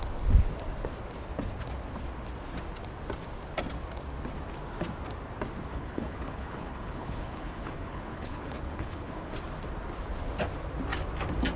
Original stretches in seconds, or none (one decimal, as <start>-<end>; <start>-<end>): 0.0-5.7; 9.3-11.6